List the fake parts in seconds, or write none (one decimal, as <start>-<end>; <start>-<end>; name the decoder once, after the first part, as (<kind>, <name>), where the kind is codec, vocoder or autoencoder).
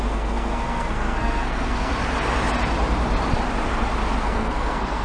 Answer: 0.0-1.9 (codec, SNAC); 4.2-5.0